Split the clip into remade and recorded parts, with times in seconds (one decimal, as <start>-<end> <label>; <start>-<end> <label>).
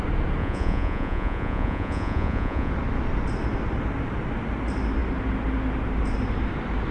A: 0.0-0.4 recorded; 0.4-2.7 remade; 2.7-6.9 recorded